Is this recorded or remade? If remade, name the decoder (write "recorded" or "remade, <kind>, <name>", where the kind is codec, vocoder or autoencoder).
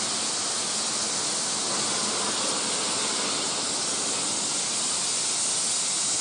recorded